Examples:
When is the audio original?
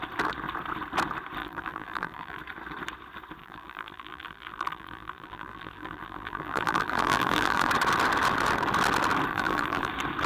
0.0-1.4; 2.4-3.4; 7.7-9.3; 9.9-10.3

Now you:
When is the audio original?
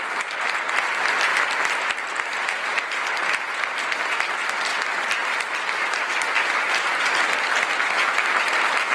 0.0-8.9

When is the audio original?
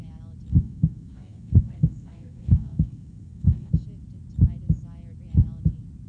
0.0-0.5; 3.7-6.1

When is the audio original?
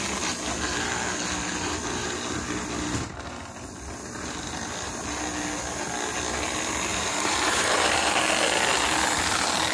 0.0-6.9; 8.1-9.7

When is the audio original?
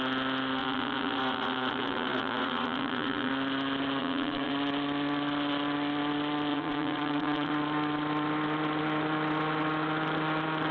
0.0-0.6; 3.3-4.0; 4.5-6.5; 7.5-10.7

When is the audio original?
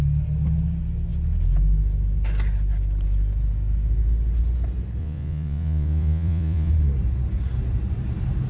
0.0-5.0; 6.7-8.5